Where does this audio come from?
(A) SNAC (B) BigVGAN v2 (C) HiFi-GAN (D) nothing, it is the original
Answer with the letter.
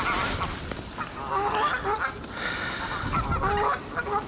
D